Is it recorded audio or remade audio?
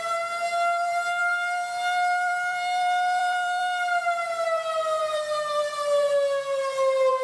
remade